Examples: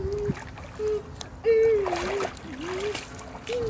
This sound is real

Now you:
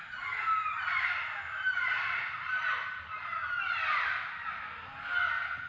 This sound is real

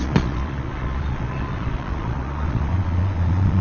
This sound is fake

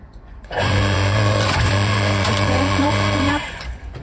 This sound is fake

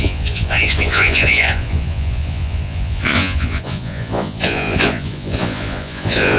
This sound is fake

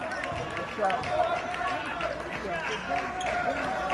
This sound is real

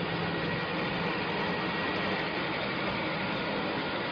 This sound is real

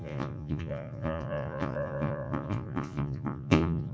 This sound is fake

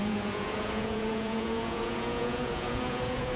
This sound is fake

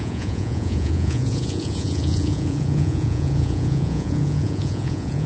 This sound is fake